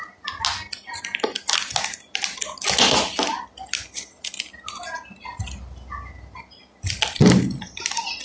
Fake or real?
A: real